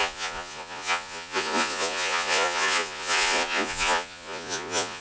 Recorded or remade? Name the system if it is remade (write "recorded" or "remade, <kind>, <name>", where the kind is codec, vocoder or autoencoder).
remade, vocoder, Vocos